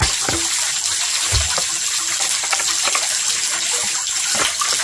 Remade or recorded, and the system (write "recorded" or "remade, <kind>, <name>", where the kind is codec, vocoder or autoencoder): recorded